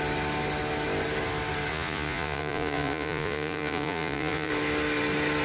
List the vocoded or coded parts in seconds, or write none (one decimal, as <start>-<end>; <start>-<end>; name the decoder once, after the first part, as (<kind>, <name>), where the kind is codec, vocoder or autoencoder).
1.7-4.5 (vocoder, Vocos)